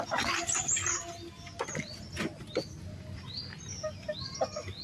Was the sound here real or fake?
real